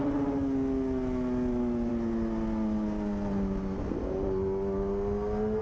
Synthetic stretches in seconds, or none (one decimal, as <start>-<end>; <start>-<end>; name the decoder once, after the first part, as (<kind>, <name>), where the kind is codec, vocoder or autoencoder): none